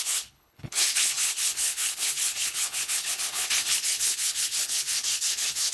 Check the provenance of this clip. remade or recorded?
remade